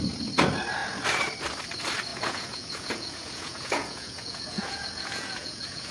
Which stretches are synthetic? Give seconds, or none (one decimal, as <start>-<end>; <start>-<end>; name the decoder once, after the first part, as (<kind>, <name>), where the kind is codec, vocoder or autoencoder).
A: 2.1-5.9 (vocoder, Vocos)